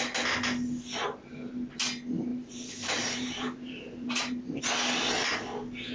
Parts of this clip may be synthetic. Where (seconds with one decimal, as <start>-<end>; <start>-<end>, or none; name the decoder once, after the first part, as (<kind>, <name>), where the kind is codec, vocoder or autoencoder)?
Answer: 2.3-4.6 (vocoder, BigVGAN v2)